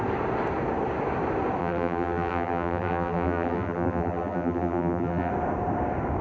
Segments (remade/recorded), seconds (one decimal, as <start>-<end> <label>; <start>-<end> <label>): 0.0-1.6 recorded; 1.6-5.3 remade; 5.3-6.2 recorded